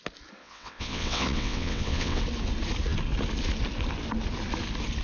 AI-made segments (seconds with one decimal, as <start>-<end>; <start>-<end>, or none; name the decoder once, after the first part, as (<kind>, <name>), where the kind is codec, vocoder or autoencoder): 0.4-2.2 (vocoder, WaveNeXt)

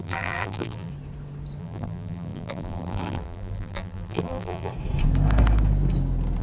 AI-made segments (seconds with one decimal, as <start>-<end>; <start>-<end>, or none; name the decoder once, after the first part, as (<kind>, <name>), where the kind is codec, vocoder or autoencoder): 0.0-0.9 (vocoder, BigVGAN v2); 1.6-4.7

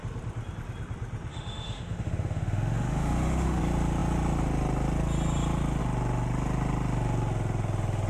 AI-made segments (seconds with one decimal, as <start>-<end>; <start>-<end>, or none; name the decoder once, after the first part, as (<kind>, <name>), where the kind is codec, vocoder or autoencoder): 1.3-3.6 (autoencoder, DAC-VAE)

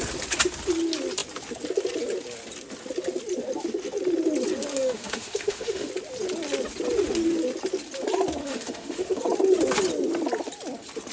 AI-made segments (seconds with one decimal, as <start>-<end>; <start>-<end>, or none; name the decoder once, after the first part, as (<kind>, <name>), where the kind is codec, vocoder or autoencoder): 4.7-5.9 (autoencoder, DAC-VAE); 8.4-9.2

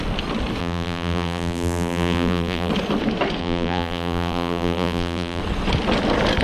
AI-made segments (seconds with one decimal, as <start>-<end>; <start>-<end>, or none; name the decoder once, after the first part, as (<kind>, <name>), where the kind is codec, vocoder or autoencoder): 0.6-2.7 (vocoder, BigVGAN v2); 3.4-5.4